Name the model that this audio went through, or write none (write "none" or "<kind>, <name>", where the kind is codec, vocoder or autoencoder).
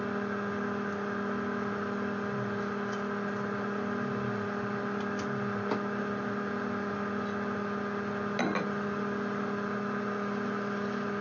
none